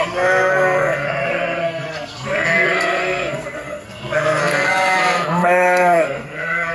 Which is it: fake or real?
fake